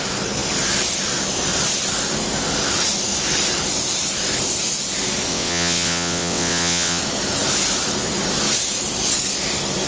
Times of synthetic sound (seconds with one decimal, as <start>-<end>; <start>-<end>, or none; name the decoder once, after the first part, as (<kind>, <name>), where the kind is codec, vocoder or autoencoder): 5.3-7.0 (vocoder, WaveNeXt)